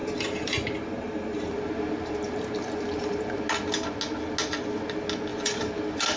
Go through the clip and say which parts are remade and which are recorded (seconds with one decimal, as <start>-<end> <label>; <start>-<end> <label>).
0.0-3.4 remade; 3.4-5.3 recorded; 5.3-6.2 remade